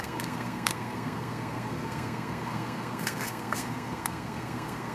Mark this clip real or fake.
fake